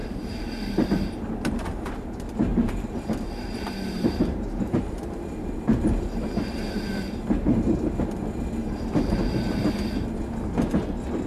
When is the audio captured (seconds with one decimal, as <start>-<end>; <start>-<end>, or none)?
0.9-2.5; 7.0-8.6; 9.7-11.3